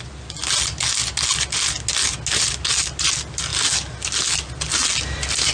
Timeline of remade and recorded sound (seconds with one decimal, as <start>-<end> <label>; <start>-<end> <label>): 0.0-5.5 recorded